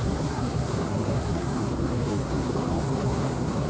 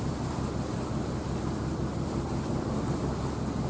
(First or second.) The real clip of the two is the second